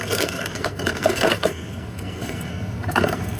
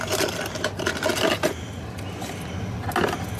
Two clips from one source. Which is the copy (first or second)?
first